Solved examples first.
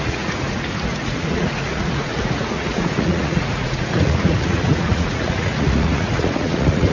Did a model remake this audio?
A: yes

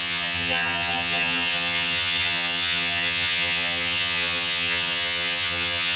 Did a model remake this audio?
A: yes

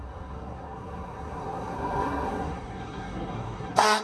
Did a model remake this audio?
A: yes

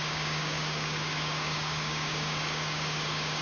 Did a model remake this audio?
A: yes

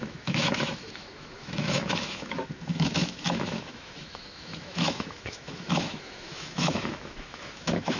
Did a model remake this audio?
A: yes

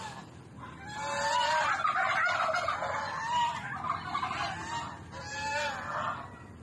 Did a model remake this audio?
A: no